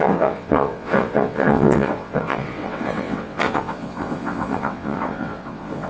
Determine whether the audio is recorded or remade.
remade